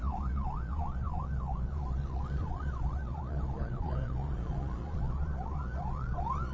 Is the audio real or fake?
fake